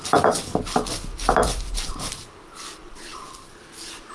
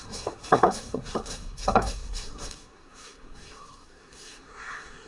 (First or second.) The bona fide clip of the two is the first